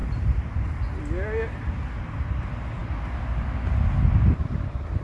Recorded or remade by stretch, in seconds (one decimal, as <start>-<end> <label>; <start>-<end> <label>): 0.0-5.0 recorded